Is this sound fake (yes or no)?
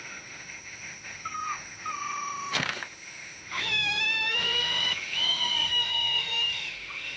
yes